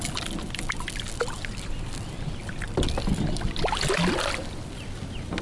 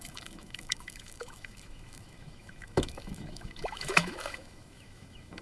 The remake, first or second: second